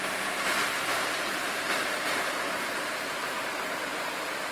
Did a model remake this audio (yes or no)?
yes